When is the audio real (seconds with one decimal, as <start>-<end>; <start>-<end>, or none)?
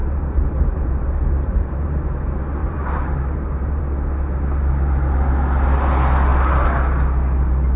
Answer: 2.1-2.6; 3.8-7.8